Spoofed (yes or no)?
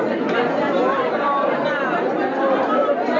no